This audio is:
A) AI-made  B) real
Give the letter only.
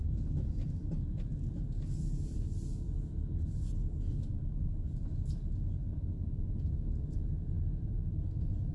B